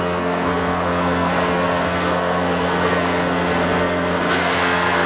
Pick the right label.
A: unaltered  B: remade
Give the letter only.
B